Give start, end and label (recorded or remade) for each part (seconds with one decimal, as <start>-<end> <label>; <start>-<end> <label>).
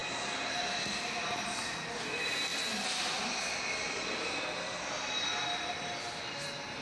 0.0-6.8 recorded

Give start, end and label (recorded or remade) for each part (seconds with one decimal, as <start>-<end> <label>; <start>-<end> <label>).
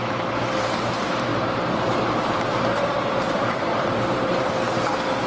0.0-1.3 recorded; 1.3-4.5 remade; 4.5-5.3 recorded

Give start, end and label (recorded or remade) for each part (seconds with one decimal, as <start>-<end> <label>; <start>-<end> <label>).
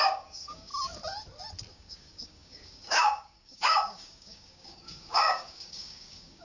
0.0-0.7 remade; 0.7-1.7 recorded; 1.7-6.4 remade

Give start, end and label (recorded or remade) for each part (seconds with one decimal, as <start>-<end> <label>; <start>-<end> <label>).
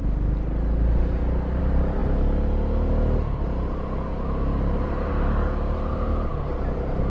0.0-7.1 recorded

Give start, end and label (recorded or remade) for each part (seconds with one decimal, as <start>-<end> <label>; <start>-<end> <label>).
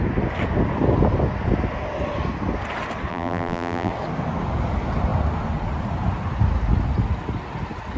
0.0-3.1 recorded; 3.1-3.9 remade; 3.9-8.0 recorded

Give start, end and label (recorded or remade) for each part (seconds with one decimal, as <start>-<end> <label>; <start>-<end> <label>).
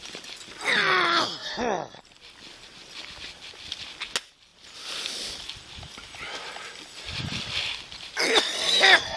0.0-9.2 recorded